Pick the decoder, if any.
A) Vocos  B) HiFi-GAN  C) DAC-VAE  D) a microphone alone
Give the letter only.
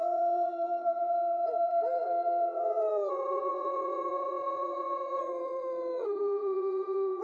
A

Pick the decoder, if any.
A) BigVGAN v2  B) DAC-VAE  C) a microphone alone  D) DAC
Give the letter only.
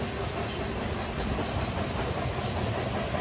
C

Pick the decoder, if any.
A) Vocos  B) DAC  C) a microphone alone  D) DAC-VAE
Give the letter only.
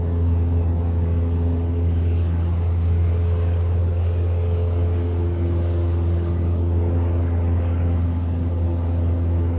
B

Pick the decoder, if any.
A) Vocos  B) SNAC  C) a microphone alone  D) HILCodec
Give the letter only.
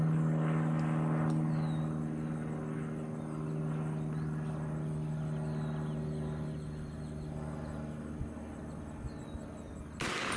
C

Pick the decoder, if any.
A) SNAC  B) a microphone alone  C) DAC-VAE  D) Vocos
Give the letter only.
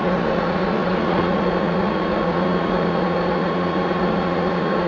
D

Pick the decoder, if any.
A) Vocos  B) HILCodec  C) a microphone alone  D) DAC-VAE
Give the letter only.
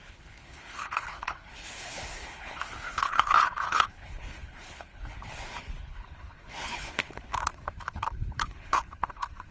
B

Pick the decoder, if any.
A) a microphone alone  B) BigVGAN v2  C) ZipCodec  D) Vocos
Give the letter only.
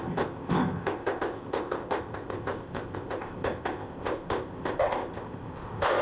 C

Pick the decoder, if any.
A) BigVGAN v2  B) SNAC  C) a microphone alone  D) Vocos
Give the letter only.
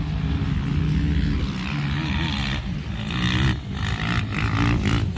C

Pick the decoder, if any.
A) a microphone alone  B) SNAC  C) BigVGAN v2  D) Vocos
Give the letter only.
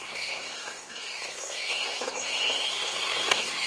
B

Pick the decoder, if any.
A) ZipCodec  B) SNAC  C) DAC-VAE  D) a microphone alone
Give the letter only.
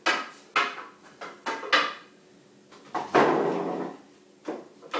D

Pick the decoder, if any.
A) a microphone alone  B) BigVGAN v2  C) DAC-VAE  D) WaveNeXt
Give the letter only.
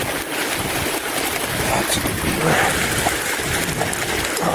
A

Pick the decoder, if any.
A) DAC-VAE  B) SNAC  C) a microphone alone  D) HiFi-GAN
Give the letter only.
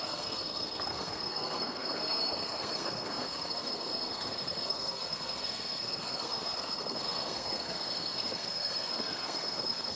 B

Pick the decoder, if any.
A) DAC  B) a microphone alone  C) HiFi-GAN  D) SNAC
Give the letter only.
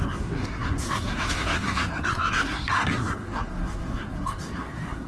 D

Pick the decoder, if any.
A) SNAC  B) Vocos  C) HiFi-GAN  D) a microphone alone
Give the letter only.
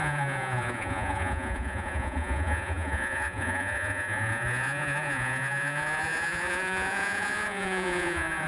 B